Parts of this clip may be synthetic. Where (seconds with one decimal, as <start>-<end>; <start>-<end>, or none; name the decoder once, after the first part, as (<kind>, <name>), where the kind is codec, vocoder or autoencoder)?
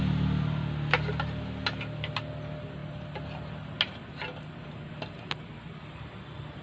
none